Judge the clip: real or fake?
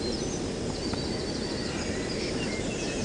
real